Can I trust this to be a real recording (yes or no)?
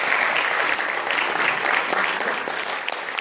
yes